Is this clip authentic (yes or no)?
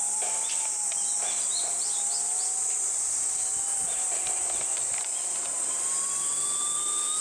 yes